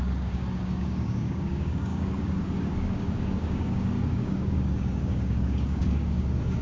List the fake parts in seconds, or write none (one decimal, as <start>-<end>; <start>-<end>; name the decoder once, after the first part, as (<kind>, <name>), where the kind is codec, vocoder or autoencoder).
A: 0.0-6.6 (codec, DAC)